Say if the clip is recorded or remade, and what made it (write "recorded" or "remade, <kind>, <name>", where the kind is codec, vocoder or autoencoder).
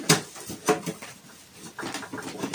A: remade, vocoder, BigVGAN v2